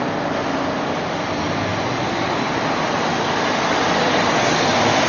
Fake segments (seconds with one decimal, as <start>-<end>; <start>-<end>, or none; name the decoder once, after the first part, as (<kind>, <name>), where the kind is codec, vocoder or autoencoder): none